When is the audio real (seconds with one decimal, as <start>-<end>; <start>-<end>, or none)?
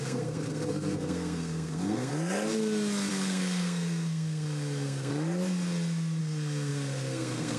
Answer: 2.1-3.1; 5.1-6.2